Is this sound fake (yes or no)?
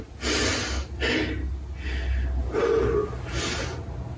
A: no